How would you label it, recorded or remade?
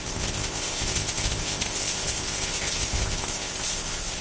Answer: remade